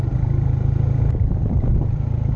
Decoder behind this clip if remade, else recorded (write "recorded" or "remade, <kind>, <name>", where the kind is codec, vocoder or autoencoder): remade, vocoder, BigVGAN v2